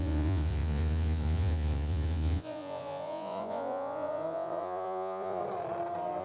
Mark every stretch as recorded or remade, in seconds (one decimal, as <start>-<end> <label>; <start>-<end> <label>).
0.0-5.4 remade; 5.4-6.2 recorded